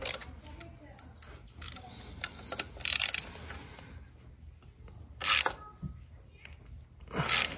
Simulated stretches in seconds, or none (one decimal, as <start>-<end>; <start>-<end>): none